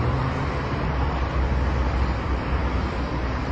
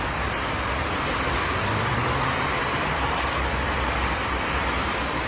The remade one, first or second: second